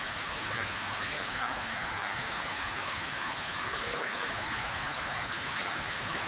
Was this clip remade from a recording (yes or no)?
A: yes